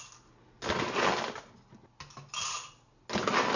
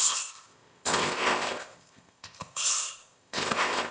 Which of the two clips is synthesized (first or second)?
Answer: second